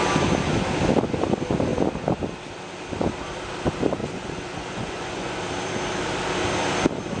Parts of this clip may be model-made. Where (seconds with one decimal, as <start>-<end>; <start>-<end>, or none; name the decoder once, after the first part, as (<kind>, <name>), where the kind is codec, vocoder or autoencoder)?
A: 4.0-5.4 (vocoder, Vocos)